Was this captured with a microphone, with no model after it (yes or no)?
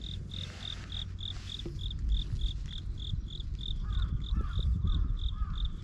yes